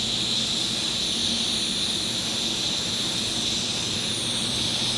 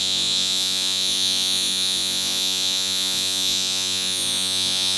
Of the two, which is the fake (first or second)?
second